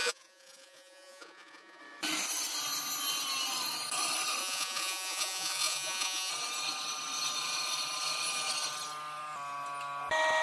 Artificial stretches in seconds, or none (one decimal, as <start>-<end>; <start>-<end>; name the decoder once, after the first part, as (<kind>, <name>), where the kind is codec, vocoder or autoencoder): 0.0-1.8 (vocoder, Vocos); 4.4-6.3